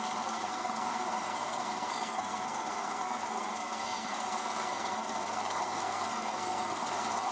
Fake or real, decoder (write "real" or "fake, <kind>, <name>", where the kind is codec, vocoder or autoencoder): fake, codec, SNAC